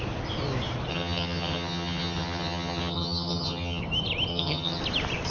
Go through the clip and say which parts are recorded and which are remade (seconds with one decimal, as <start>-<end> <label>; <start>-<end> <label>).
0.0-0.9 recorded; 0.9-3.8 remade; 3.8-4.3 recorded; 4.3-4.8 remade; 4.8-5.3 recorded